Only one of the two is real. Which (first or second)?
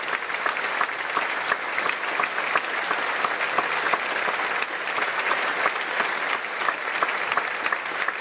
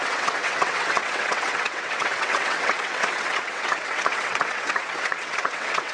first